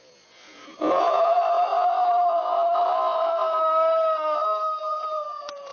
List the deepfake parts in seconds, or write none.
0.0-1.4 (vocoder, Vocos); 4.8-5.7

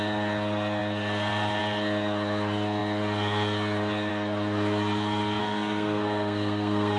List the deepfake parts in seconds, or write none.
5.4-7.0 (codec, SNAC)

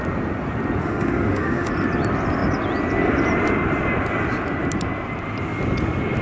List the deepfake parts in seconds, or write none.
0.8-1.7 (autoencoder, DAC-VAE)